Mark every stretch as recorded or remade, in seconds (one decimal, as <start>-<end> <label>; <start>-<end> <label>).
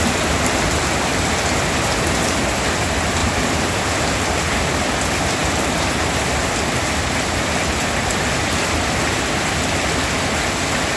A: 0.0-3.2 recorded; 3.2-3.8 remade; 3.8-11.0 recorded